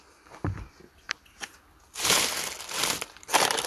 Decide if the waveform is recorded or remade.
recorded